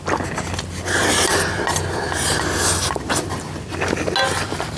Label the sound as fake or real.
real